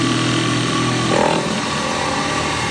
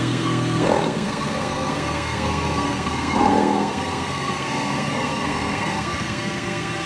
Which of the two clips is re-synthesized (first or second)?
second